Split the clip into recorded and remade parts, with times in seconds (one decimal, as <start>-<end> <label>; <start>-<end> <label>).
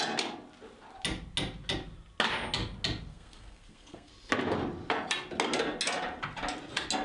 0.0-3.1 recorded; 3.1-4.1 remade; 4.1-7.0 recorded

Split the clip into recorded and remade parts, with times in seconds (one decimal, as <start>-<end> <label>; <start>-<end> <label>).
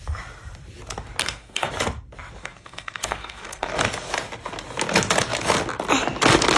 0.0-1.2 recorded; 1.2-1.7 remade; 1.7-2.4 recorded; 2.4-3.7 remade; 3.7-6.6 recorded